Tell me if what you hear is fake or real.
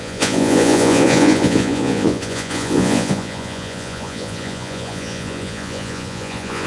fake